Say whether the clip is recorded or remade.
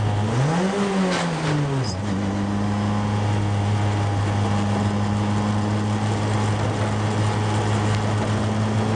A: recorded